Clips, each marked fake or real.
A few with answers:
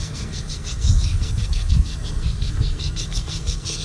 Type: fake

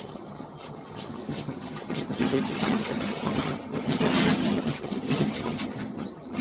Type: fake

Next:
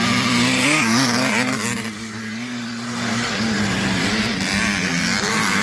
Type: real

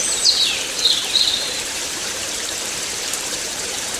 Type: fake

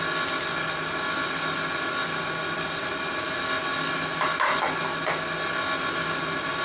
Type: real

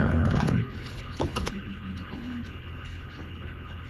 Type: fake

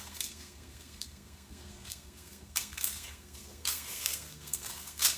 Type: fake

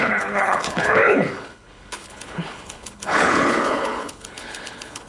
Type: fake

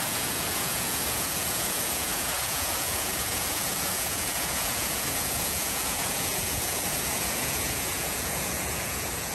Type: fake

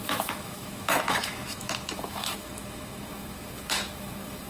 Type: fake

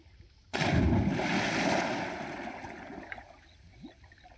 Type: real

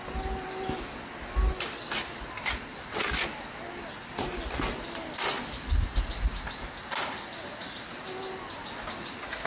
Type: real